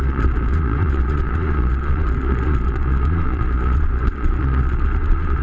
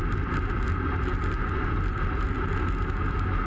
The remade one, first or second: first